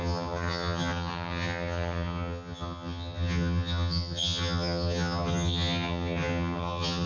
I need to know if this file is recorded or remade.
remade